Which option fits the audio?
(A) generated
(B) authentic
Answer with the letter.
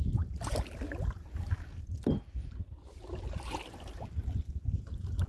B